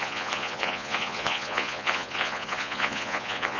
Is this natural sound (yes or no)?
no